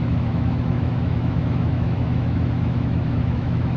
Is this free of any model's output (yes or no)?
no